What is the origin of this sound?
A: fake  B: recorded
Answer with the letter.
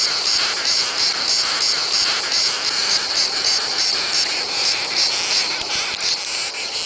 B